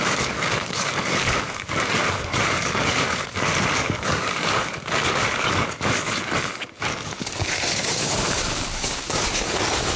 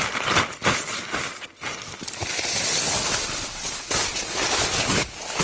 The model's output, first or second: first